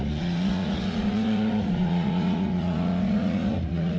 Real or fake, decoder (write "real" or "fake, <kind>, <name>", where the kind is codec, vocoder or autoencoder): fake, vocoder, Vocos